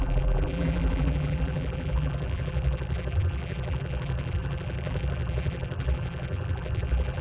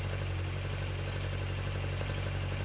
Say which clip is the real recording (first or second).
second